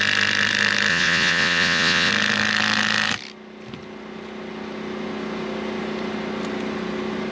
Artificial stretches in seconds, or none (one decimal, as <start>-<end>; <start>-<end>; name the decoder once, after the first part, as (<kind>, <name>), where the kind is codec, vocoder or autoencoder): 0.9-2.1 (vocoder, Vocos)